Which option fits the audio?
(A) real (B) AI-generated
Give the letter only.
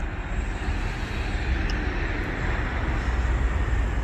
A